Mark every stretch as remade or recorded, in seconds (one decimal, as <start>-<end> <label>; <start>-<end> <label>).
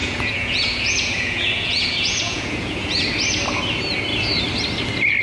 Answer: 0.0-3.1 remade; 3.1-5.2 recorded